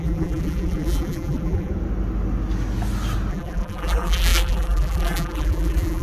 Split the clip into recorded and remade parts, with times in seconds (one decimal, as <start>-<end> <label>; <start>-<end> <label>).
0.0-1.7 remade; 1.7-3.3 recorded; 3.3-6.0 remade